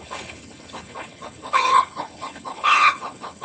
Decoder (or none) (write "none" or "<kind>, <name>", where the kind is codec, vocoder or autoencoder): codec, HILCodec